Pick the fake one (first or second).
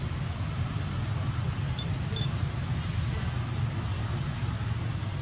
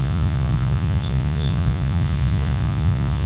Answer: second